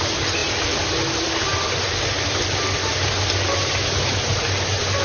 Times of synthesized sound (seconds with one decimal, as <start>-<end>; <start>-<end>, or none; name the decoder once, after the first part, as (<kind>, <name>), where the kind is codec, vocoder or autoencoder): none